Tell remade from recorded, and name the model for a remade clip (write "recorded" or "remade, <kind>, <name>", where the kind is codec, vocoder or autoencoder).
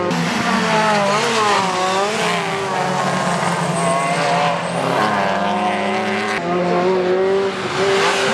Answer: recorded